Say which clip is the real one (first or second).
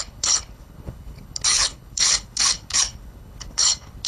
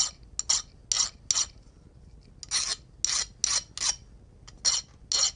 second